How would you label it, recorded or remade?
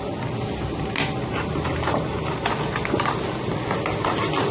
recorded